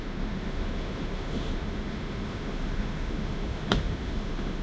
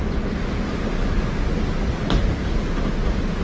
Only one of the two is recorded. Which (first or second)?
second